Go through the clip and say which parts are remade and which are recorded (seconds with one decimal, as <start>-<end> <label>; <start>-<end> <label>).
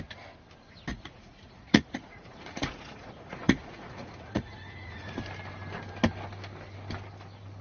0.0-0.9 recorded; 0.9-5.2 remade; 5.2-7.6 recorded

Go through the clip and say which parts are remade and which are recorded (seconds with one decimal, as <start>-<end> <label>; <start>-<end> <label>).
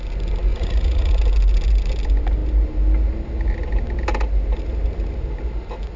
0.0-0.5 recorded; 0.5-1.1 remade; 1.1-6.0 recorded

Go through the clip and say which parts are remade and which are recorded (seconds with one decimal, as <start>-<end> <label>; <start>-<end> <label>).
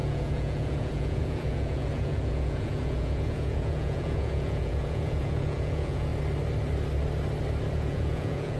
0.0-6.1 remade; 6.1-7.7 recorded; 7.7-8.6 remade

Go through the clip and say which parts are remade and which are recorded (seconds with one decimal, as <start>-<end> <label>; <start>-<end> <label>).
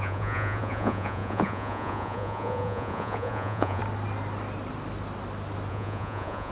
0.0-3.8 remade; 3.8-5.7 recorded; 5.7-6.5 remade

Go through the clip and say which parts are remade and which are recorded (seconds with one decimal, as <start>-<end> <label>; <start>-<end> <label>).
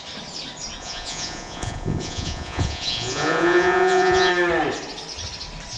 0.0-0.8 recorded; 0.8-4.3 remade; 4.3-5.8 recorded